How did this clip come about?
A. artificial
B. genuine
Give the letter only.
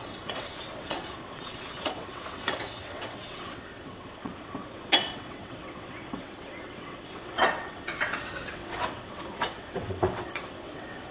A